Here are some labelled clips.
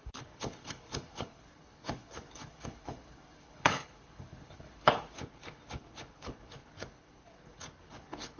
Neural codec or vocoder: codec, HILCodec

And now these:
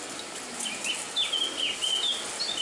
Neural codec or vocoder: none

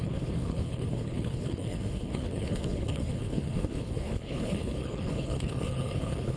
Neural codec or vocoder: codec, HILCodec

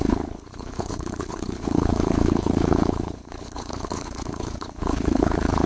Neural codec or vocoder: codec, HILCodec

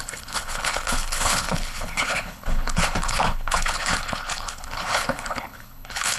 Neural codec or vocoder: codec, HILCodec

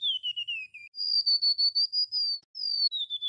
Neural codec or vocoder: none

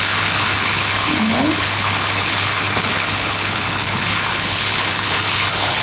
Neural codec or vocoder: codec, HILCodec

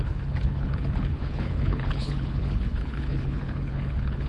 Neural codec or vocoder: codec, HILCodec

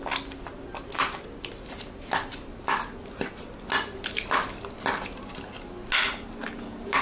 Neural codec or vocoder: none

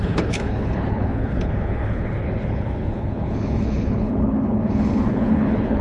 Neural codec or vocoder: codec, HILCodec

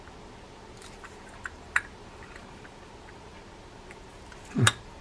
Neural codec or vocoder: none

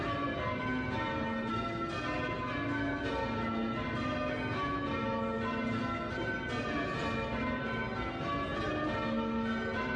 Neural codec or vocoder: none